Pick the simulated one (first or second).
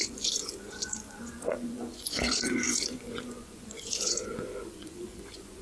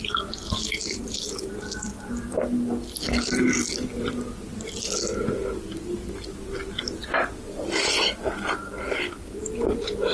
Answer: first